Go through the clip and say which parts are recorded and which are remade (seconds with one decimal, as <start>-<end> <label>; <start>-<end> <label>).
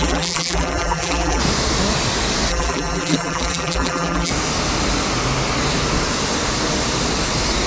0.0-1.4 remade; 1.4-2.5 recorded; 2.5-4.3 remade; 4.3-7.7 recorded